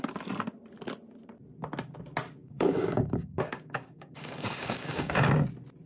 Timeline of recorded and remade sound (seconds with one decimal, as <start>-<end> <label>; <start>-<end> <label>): 0.0-2.4 recorded; 2.4-5.3 remade; 5.3-5.9 recorded